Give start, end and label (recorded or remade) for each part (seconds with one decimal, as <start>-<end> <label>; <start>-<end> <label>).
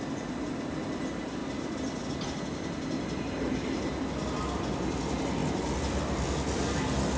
0.0-1.4 recorded; 1.4-2.0 remade; 2.0-7.2 recorded